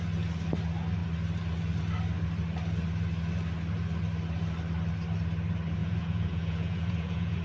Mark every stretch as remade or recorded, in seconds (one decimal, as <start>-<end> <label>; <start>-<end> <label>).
0.0-5.8 recorded; 5.8-7.4 remade